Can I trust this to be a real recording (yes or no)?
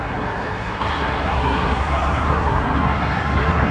no